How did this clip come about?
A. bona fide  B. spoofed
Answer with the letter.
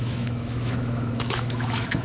B